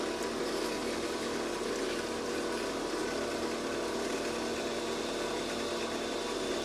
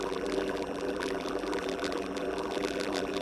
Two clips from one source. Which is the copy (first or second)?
second